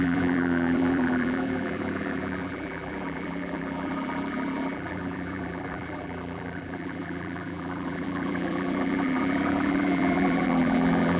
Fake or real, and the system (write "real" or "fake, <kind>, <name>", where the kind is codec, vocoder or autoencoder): fake, vocoder, BigVGAN v2